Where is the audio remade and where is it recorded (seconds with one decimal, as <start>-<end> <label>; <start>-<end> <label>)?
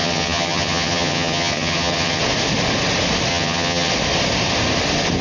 0.0-2.2 remade; 2.2-3.3 recorded; 3.3-3.9 remade; 3.9-5.2 recorded